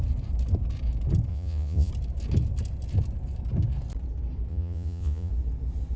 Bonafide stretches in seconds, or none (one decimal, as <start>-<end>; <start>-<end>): 0.0-1.3; 1.9-4.5; 5.3-6.0